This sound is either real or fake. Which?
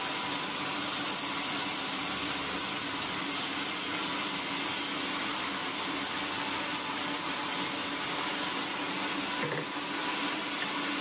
real